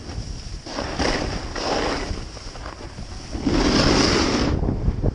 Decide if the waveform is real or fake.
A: real